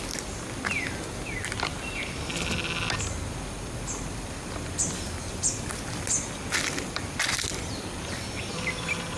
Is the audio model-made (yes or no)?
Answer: no